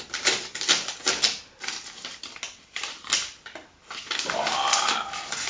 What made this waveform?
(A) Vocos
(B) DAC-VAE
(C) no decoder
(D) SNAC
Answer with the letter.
C